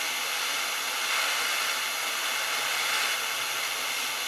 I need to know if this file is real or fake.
real